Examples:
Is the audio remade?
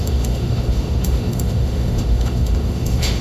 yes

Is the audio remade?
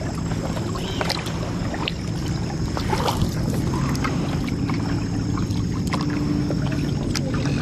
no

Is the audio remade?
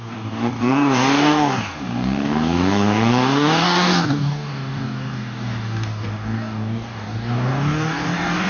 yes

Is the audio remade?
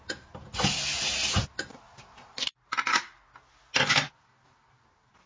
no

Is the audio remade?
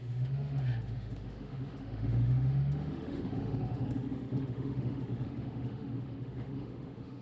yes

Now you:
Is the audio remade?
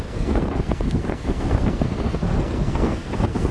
yes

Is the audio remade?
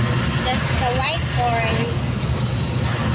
no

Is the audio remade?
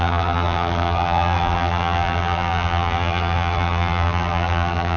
yes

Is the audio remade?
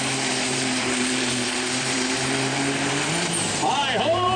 yes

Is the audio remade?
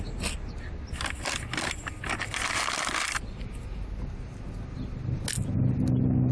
no